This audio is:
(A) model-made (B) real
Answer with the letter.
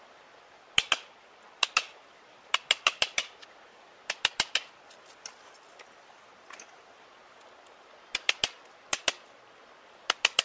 A